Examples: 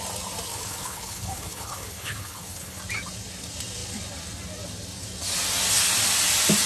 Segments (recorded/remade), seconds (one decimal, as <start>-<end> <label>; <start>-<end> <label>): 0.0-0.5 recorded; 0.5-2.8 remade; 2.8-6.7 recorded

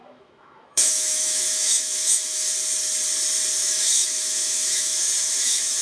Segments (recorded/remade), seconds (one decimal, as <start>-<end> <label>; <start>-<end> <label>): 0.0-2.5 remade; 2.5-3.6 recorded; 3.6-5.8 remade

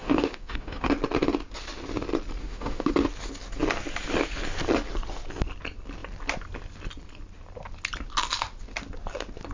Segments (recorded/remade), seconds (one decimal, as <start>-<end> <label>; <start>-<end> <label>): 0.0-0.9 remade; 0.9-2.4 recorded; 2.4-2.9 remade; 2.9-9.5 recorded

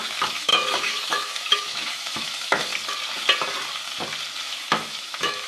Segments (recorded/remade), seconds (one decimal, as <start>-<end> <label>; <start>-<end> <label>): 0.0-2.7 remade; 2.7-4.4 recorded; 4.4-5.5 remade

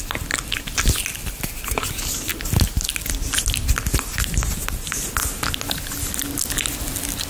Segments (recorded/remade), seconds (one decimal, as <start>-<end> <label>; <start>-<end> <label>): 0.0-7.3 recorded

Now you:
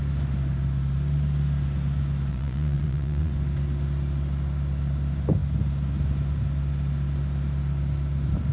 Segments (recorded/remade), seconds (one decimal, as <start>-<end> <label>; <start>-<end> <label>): 0.0-2.3 recorded; 2.3-3.3 remade; 3.3-8.5 recorded

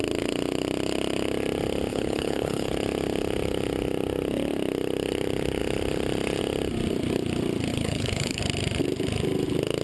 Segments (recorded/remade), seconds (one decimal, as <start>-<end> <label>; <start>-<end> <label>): 0.0-1.9 recorded; 1.9-2.7 remade; 2.7-7.7 recorded; 7.7-8.4 remade; 8.4-9.8 recorded

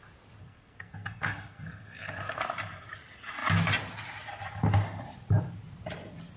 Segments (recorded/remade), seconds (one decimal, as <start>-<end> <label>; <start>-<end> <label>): 0.0-0.4 recorded; 0.4-2.4 remade; 2.4-6.4 recorded